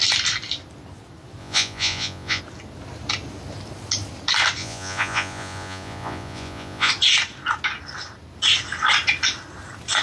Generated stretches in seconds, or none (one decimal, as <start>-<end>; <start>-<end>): 1.4-2.4; 4.6-6.9